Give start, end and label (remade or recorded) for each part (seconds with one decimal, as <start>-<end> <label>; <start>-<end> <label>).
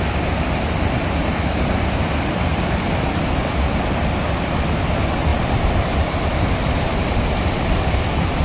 0.0-5.3 recorded; 5.3-7.5 remade; 7.5-8.4 recorded